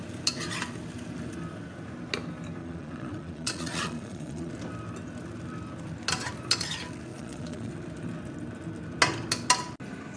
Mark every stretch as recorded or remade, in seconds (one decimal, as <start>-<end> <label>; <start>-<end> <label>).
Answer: 0.0-2.6 recorded; 2.6-4.5 remade; 4.5-7.1 recorded; 7.1-7.7 remade; 7.7-10.2 recorded